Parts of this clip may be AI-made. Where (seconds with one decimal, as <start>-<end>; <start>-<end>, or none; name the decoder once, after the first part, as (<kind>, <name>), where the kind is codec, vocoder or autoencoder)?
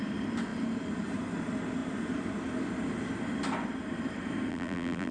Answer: 4.5-5.1 (vocoder, BigVGAN v2)